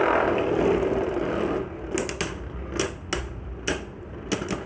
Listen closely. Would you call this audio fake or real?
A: real